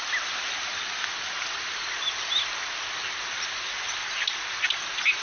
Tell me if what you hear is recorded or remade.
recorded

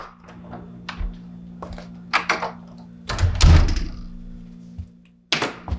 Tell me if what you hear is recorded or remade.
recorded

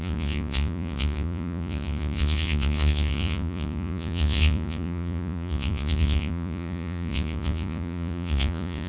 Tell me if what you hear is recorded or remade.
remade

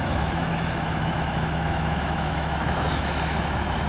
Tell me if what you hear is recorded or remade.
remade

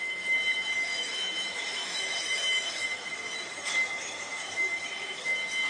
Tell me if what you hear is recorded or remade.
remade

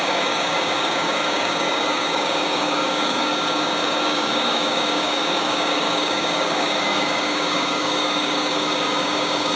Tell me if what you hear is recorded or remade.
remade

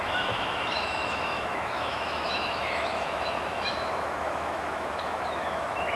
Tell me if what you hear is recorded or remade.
remade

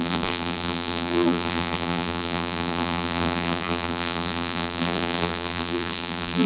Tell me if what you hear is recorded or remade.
remade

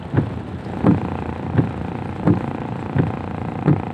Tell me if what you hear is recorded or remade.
remade